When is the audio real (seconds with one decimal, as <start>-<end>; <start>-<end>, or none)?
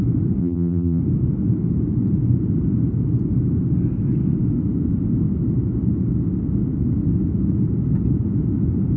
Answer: 0.0-0.4; 1.0-9.0